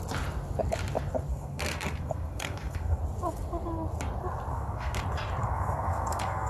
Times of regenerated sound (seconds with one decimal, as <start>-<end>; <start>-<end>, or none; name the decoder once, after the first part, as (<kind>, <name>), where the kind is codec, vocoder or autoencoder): 1.3-3.0 (codec, SNAC); 4.5-5.0; 5.4-6.5